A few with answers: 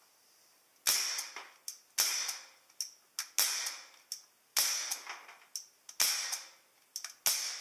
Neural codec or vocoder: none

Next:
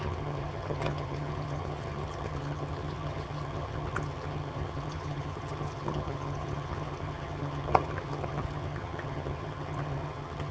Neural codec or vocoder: vocoder, HiFi-GAN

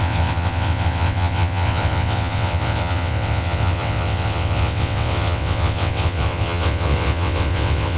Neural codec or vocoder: vocoder, WaveNeXt